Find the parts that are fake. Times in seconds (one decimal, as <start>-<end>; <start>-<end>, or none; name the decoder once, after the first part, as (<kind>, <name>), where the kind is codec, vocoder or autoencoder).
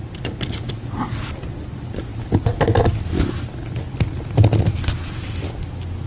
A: none